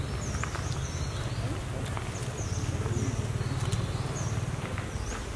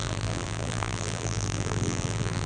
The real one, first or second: first